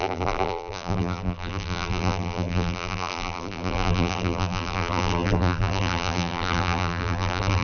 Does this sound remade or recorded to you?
remade